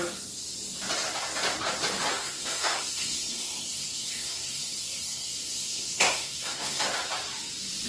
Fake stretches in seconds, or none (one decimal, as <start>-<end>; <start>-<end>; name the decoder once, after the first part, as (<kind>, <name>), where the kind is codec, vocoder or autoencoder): 2.1-6.8 (codec, SNAC)